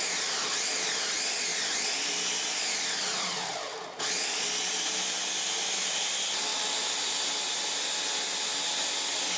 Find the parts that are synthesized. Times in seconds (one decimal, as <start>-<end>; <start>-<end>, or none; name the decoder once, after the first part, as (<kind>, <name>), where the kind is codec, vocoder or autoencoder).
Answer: none